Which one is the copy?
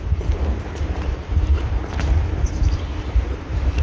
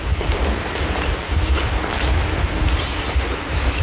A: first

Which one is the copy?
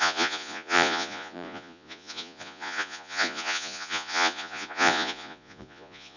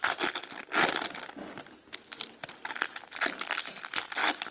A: first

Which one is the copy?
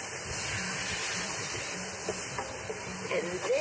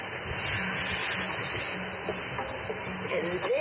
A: first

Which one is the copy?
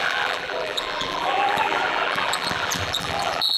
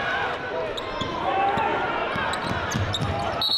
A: first